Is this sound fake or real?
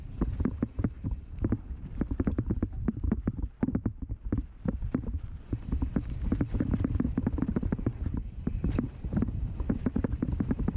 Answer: fake